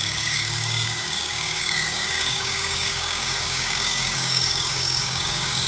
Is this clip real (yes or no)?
no